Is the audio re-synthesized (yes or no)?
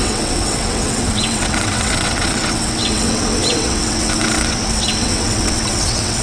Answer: yes